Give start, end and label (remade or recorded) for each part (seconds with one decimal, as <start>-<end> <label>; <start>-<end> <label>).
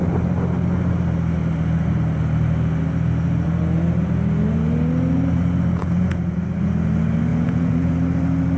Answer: 0.0-5.8 recorded; 5.8-6.4 remade; 6.4-7.3 recorded; 7.3-7.9 remade; 7.9-8.6 recorded